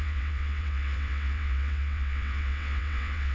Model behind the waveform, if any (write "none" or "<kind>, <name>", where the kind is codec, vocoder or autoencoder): vocoder, WaveNeXt